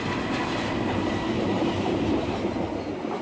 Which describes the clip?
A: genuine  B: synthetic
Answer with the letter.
A